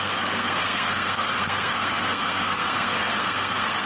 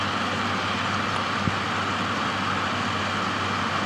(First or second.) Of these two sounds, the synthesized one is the first